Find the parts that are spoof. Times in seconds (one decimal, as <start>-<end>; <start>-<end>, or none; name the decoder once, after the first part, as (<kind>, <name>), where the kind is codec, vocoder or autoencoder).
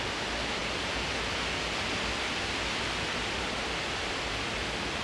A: none